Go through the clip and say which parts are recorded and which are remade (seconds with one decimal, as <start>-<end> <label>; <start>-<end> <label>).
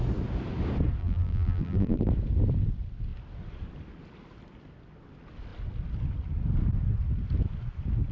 0.0-1.0 recorded; 1.0-2.1 remade; 2.1-8.1 recorded